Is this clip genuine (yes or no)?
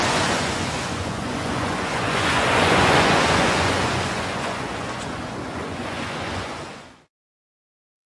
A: no